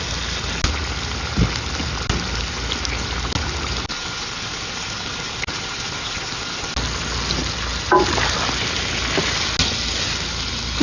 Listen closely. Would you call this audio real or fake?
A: real